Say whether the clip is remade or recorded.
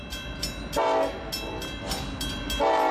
recorded